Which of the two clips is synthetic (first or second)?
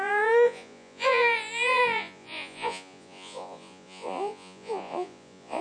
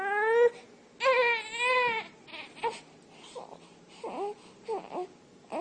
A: first